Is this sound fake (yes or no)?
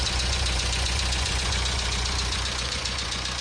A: yes